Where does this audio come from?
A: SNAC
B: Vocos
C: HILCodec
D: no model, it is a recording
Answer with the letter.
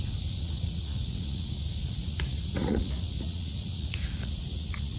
B